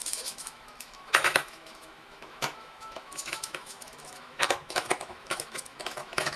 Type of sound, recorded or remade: remade